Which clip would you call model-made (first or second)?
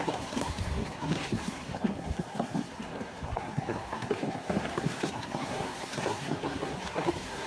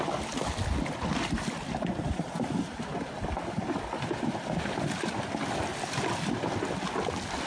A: first